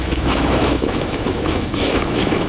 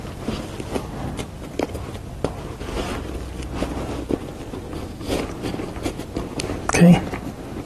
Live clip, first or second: second